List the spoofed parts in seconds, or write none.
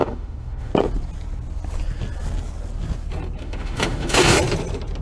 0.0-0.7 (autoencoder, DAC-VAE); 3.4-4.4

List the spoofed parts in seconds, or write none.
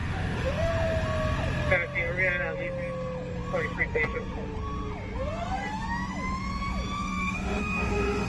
0.0-0.7 (autoencoder, DAC-VAE); 7.1-8.3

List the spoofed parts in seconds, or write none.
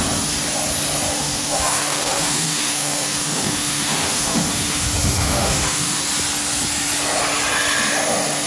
1.1-6.0 (autoencoder, DAC-VAE)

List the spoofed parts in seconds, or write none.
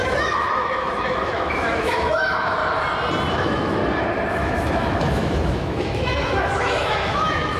0.0-2.6 (autoencoder, DAC-VAE); 3.3-3.8; 4.3-7.6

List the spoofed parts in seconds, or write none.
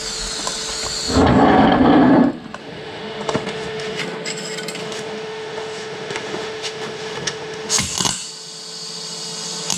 2.6-4.0 (autoencoder, DAC-VAE); 4.8-7.8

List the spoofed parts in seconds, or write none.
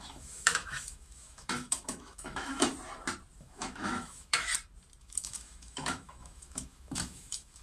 0.0-2.7 (autoencoder, DAC-VAE); 3.4-4.5; 5.0-7.6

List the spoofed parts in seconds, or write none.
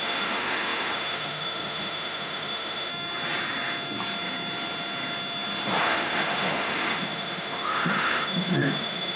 0.0-2.9 (autoencoder, DAC-VAE); 5.8-9.2